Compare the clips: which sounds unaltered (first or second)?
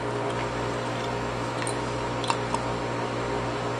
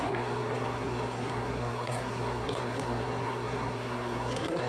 first